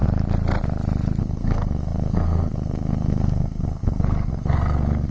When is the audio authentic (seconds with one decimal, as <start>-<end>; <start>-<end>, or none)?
0.0-1.2